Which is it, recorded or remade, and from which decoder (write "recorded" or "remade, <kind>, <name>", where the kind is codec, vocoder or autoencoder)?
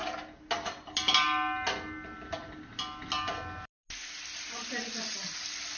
recorded